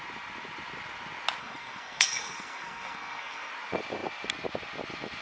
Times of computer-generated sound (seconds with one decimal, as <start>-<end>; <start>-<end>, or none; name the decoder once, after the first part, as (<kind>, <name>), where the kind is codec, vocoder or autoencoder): 1.4-3.5 (codec, SNAC)